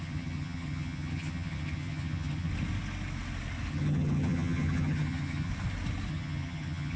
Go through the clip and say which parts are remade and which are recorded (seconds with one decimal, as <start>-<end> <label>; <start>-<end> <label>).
0.0-2.5 remade; 2.5-3.7 recorded; 3.7-5.5 remade; 5.5-6.1 recorded; 6.1-7.0 remade